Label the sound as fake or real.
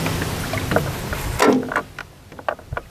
real